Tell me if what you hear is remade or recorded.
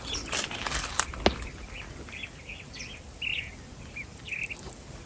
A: recorded